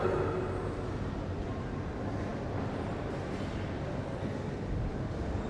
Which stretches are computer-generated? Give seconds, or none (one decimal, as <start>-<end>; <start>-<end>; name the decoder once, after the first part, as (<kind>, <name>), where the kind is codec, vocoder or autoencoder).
none